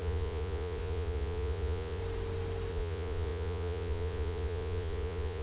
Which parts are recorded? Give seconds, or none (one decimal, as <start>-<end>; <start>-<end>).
2.0-2.7